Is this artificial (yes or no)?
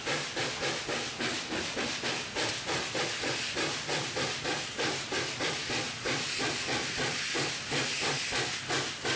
no